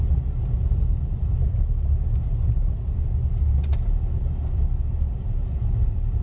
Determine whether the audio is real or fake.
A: real